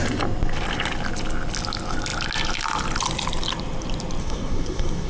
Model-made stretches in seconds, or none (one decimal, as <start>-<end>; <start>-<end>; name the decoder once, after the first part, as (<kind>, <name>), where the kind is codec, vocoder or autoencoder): 4.2-5.1 (codec, SNAC)